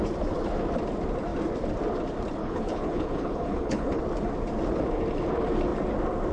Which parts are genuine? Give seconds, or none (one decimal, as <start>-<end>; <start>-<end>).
0.0-2.4; 4.0-6.3